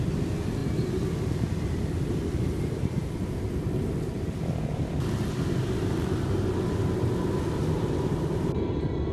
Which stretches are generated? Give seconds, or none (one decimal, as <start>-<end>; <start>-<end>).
none